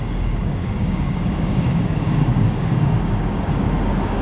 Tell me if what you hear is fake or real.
fake